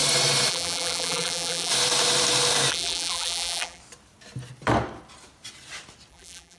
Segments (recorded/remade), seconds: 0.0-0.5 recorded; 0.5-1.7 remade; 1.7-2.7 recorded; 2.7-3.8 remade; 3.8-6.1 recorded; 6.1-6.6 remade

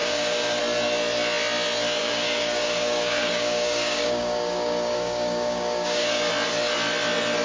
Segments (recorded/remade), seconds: 0.0-0.6 remade; 0.6-2.0 recorded; 2.0-6.3 remade; 6.3-7.4 recorded

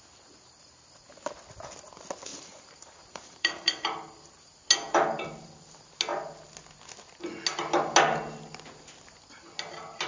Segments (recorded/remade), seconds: 0.0-2.3 recorded; 2.3-4.3 remade; 4.3-10.1 recorded

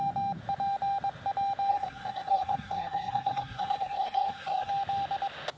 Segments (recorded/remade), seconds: 0.0-1.7 recorded; 1.7-4.7 remade; 4.7-5.6 recorded